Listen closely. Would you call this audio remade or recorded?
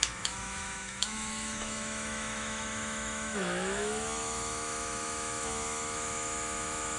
remade